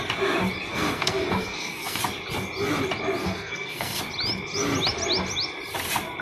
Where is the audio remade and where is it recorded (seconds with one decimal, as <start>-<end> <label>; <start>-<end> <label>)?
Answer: 0.0-0.7 recorded; 0.7-2.0 remade; 2.0-3.2 recorded; 3.2-4.0 remade; 4.0-6.2 recorded